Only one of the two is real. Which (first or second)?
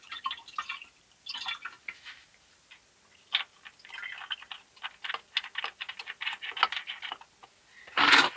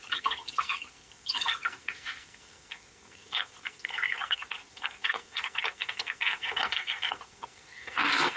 first